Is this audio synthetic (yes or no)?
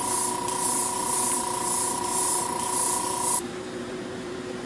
yes